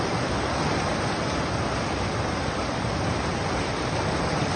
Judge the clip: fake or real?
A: real